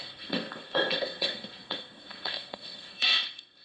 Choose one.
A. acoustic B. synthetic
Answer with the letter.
B